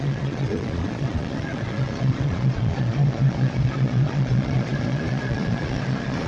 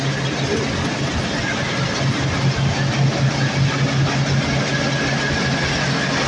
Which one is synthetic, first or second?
first